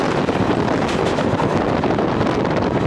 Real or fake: real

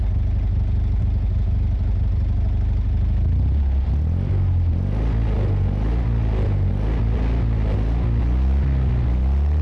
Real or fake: real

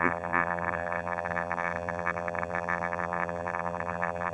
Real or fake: fake